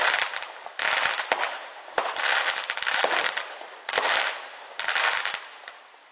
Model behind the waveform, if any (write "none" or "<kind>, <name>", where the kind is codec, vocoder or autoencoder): none